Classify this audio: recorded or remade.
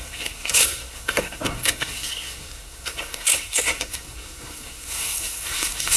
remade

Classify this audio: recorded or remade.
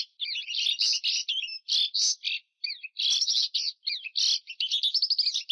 recorded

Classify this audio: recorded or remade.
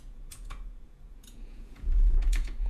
remade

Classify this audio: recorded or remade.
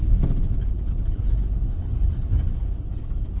recorded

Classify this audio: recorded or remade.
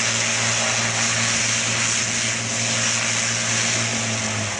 recorded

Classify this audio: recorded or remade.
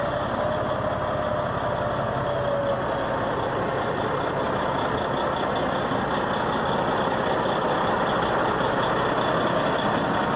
recorded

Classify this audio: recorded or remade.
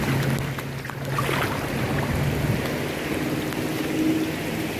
recorded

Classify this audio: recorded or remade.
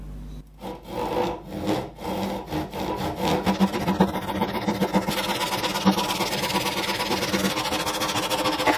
recorded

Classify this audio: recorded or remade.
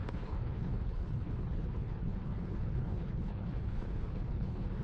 remade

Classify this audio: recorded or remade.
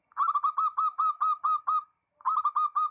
recorded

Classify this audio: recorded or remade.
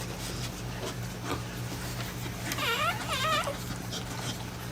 recorded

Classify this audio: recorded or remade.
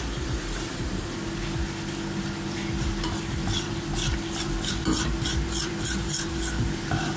remade